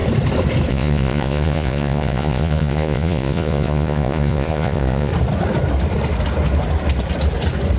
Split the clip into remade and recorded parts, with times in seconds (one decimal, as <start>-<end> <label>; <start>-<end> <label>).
0.0-0.7 recorded; 0.7-5.1 remade; 5.1-7.8 recorded